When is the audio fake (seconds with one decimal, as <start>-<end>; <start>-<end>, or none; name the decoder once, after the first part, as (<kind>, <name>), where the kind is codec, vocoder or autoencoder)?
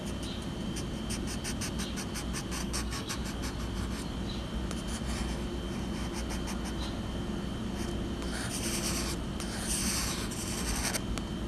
2.6-3.1 (codec, SNAC)